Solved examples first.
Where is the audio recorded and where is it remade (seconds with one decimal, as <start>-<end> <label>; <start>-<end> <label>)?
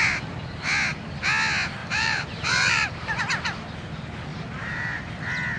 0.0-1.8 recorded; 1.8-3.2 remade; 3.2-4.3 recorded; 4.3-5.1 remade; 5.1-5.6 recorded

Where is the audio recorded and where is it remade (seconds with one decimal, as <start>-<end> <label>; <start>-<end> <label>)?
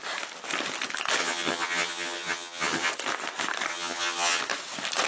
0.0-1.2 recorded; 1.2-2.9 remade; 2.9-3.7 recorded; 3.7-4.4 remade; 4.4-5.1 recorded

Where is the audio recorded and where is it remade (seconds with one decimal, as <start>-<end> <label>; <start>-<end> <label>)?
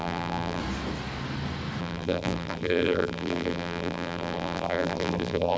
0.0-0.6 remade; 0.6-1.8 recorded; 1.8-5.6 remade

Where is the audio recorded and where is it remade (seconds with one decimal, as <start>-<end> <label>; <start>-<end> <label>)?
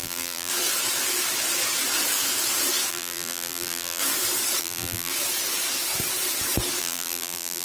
0.0-0.5 remade; 0.5-2.9 recorded; 2.9-4.0 remade; 4.0-4.6 recorded; 4.6-5.1 remade; 5.1-6.8 recorded; 6.8-7.6 remade